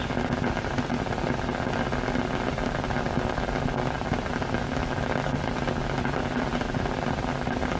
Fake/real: real